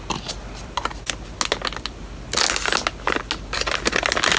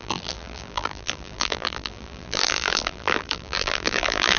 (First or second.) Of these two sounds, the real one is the first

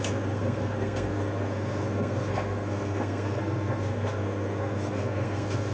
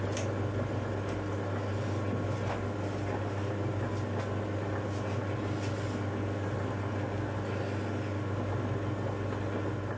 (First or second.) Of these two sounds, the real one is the second